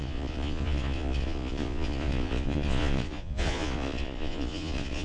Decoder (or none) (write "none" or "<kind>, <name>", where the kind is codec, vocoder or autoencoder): vocoder, Vocos